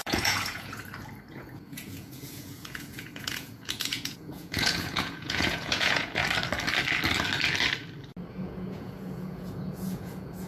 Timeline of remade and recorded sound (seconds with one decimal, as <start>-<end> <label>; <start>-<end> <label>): 0.0-0.8 remade; 0.8-1.3 recorded; 1.3-6.2 remade; 6.2-8.3 recorded; 8.3-10.5 remade